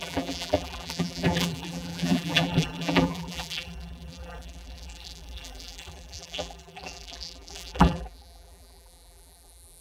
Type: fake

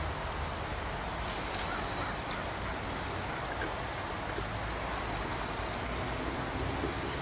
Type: real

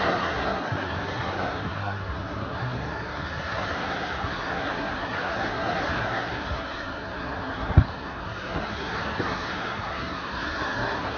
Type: fake